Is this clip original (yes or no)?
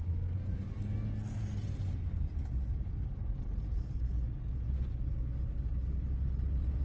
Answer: yes